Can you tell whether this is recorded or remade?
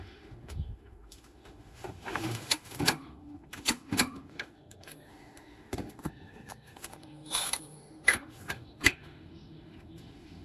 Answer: remade